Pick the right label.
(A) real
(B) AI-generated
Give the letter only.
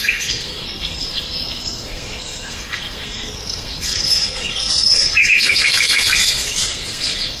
B